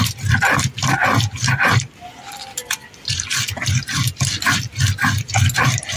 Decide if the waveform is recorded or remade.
remade